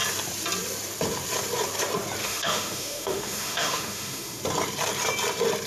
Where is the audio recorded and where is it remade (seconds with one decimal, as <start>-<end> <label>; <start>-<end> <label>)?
0.0-2.2 recorded; 2.2-4.4 remade; 4.4-5.7 recorded